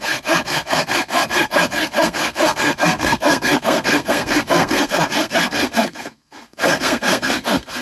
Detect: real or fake fake